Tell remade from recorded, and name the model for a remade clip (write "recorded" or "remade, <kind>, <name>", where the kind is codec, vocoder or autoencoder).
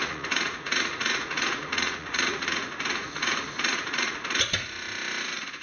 remade, vocoder, Vocos